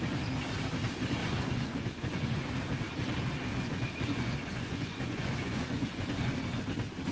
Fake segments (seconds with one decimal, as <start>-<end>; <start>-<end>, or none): 1.2-2.5; 3.5-6.4